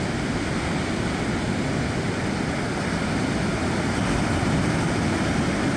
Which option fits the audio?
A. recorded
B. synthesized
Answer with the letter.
A